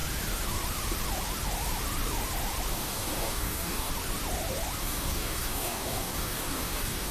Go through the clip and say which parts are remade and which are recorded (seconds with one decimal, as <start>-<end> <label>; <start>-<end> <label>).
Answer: 0.0-2.7 recorded; 2.7-3.9 remade; 3.9-4.8 recorded; 4.8-7.1 remade